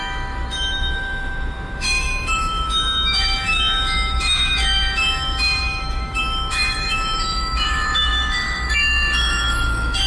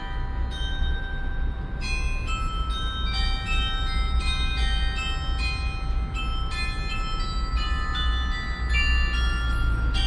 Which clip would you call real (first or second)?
second